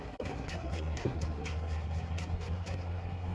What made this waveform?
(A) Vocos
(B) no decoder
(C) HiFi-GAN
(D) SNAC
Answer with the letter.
D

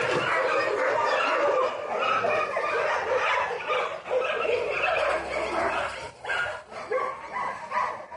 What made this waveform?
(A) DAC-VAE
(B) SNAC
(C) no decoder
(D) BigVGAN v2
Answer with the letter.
C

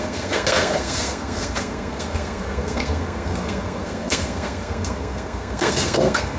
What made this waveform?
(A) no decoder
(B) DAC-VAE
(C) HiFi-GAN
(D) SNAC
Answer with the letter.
D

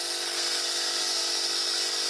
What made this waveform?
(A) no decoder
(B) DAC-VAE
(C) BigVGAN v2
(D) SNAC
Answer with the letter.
D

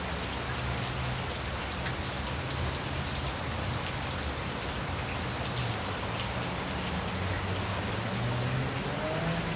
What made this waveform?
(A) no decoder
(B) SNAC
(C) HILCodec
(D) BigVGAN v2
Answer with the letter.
A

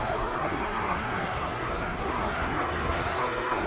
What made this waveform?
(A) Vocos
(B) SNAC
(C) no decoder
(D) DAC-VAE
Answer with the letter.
B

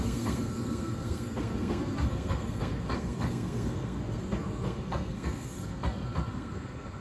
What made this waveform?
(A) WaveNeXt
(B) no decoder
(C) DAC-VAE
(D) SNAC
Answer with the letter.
D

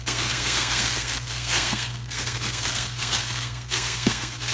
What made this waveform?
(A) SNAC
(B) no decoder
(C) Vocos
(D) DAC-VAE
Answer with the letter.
A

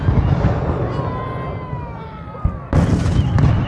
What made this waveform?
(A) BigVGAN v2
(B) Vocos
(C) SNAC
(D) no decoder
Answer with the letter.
D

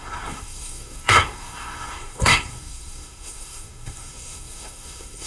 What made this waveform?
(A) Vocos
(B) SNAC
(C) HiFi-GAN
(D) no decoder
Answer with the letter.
B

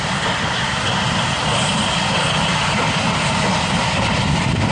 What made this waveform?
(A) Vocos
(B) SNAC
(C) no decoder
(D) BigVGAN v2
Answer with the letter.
C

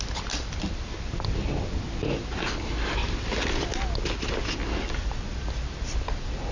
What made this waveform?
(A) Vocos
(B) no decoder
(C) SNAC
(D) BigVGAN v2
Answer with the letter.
B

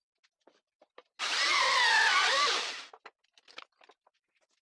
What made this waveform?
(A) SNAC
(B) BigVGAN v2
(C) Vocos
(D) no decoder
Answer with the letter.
D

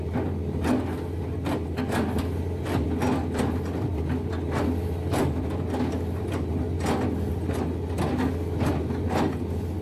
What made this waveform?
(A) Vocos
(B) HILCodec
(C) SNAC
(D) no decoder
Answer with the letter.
D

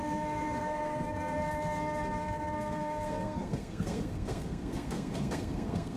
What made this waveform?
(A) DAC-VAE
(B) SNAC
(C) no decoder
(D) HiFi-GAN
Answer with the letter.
B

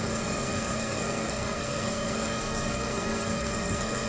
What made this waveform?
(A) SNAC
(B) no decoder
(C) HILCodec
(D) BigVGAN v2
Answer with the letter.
A